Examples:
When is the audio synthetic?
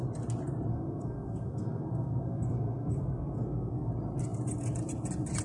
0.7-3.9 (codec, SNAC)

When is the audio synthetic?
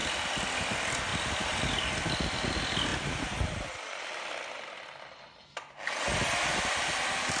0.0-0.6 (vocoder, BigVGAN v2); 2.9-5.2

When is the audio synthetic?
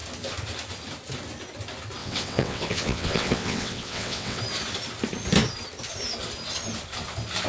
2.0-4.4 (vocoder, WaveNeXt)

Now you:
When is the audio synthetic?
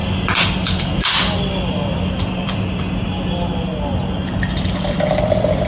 0.0-2.5 (vocoder, BigVGAN v2)